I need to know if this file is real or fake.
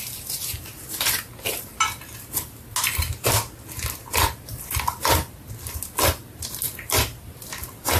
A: real